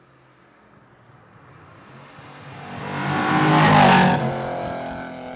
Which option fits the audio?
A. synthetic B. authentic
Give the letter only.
B